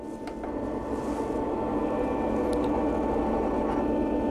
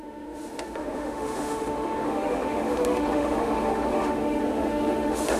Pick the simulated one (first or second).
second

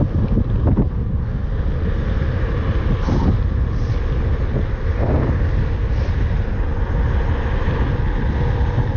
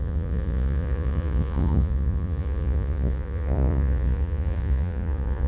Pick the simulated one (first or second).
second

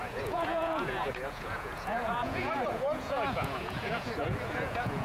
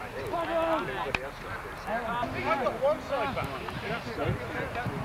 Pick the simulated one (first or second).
first